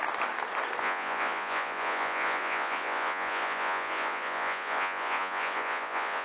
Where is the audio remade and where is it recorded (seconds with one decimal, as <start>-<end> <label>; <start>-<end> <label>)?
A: 0.0-0.8 recorded; 0.8-6.2 remade